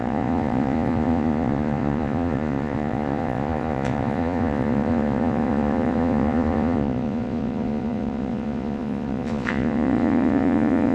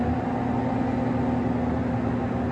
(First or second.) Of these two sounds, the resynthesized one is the first